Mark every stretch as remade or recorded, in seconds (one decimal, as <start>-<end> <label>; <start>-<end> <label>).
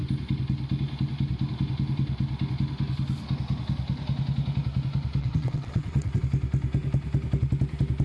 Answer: 0.0-5.2 recorded; 5.2-6.2 remade; 6.2-8.0 recorded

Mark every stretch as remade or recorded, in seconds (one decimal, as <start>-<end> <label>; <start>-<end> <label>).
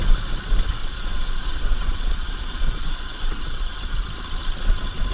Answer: 0.0-0.8 recorded; 0.8-3.9 remade; 3.9-5.1 recorded